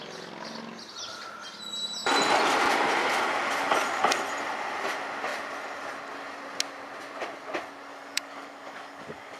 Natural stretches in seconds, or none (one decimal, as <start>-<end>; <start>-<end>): 0.0-7.9